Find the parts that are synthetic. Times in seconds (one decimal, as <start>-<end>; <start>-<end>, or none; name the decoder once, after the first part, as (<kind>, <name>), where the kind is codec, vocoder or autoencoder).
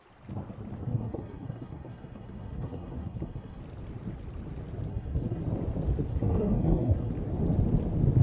0.8-3.6 (codec, SNAC); 4.9-5.4; 6.1-7.1